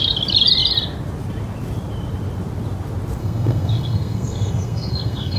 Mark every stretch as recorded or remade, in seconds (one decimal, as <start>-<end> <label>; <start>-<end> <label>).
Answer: 0.0-3.2 recorded; 3.2-5.4 remade